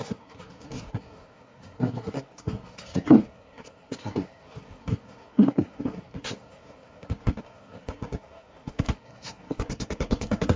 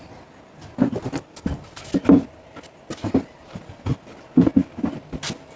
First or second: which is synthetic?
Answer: first